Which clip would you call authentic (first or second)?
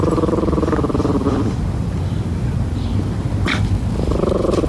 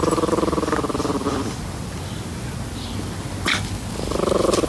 second